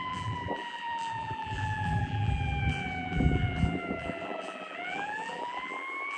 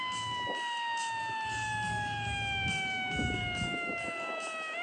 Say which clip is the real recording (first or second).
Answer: second